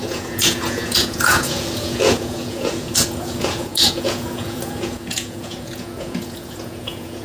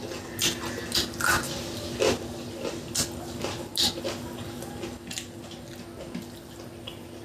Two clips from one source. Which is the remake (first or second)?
first